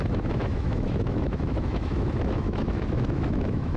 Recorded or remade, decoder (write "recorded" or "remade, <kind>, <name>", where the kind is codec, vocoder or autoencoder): remade, autoencoder, DAC-VAE